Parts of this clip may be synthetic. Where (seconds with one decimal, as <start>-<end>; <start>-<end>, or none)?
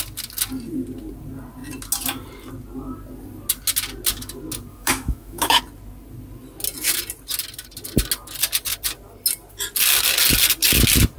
4.7-5.6